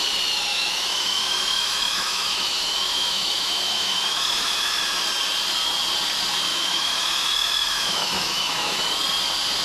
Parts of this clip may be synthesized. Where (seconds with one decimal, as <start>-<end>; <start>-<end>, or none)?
0.5-4.8; 6.5-8.8